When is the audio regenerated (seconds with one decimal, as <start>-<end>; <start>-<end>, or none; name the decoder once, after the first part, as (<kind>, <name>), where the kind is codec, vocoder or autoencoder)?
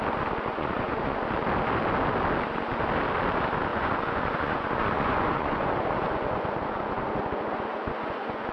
0.5-1.2 (vocoder, Vocos); 3.7-8.5